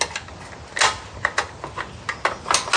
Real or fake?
real